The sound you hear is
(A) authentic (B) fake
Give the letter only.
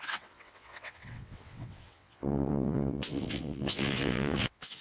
B